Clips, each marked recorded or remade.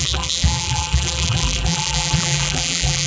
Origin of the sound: remade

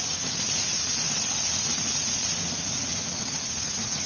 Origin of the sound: remade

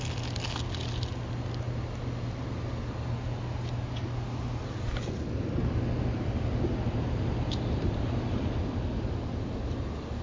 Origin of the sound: recorded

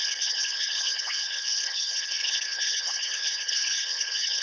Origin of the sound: remade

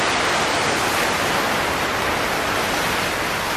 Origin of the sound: recorded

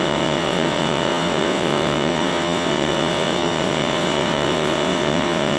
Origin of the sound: remade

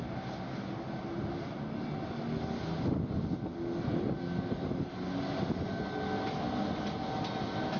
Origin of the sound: recorded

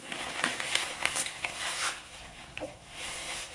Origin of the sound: remade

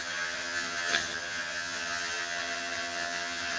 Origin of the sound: remade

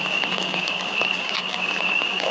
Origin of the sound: remade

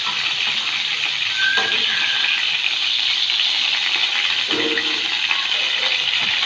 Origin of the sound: recorded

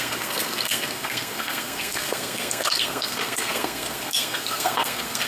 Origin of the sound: remade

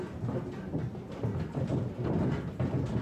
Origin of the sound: recorded